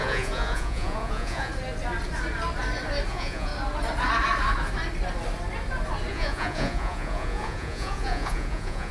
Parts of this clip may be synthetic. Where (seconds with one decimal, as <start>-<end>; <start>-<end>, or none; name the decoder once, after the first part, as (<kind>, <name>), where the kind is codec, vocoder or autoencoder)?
0.0-1.5 (vocoder, Vocos); 3.1-3.5; 6.1-8.9